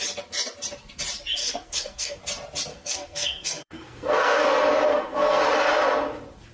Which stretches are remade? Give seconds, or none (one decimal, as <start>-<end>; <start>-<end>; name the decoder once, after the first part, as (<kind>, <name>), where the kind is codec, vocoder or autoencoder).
1.4-2.2 (codec, SNAC); 2.7-4.4; 4.9-5.4